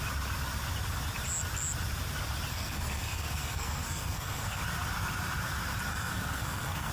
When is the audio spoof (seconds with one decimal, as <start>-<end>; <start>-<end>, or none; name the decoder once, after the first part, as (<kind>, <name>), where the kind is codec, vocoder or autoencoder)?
2.5-4.6 (codec, SNAC); 5.9-6.9